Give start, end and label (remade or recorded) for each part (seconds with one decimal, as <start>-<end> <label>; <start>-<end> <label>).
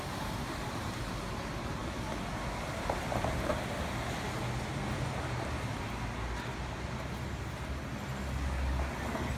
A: 0.0-9.4 recorded